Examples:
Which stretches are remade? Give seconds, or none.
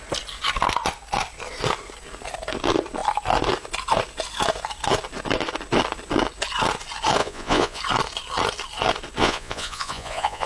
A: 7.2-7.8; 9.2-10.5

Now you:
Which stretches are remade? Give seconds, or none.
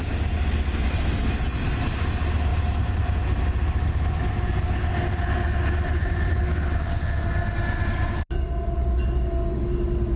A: 5.9-6.4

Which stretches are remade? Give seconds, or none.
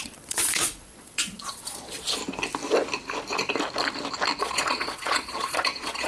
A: 0.0-2.2; 4.4-6.1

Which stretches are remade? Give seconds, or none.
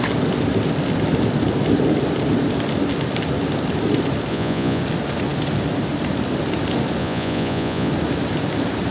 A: 4.3-4.8; 7.0-7.9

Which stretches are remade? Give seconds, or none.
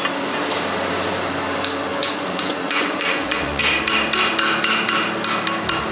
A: 1.9-3.6